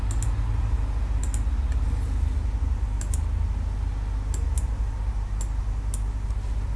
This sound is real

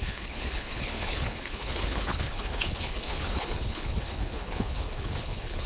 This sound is fake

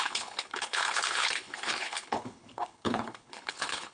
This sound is fake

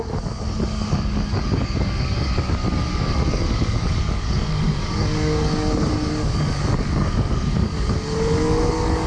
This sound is fake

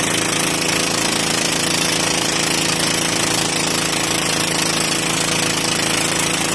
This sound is real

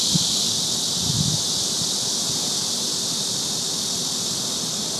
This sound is real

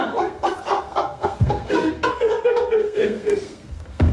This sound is fake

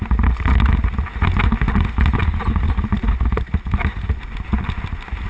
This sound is real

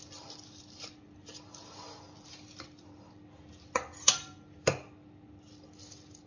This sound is fake